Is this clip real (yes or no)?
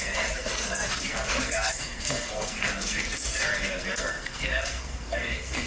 no